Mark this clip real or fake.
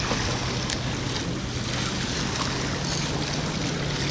real